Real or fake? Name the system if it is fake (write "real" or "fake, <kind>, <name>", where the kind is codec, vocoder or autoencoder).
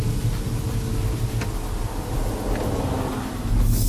real